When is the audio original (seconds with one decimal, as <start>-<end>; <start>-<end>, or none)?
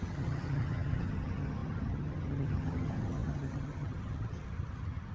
none